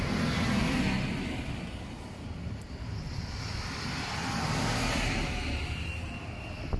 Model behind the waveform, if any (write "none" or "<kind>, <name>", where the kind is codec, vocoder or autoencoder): none